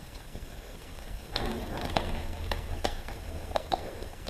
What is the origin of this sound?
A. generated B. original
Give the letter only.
A